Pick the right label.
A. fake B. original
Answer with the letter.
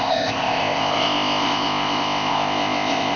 A